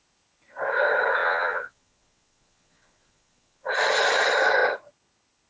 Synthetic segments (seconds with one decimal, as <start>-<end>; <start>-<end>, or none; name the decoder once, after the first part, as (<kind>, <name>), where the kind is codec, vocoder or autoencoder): 1.2-3.7 (vocoder, Vocos)